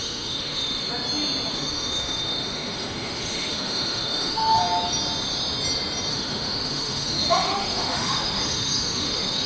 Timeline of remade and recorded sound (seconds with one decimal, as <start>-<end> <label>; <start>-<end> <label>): 0.0-0.9 remade; 0.9-1.5 recorded; 1.5-4.6 remade; 4.6-6.1 recorded; 6.1-9.5 remade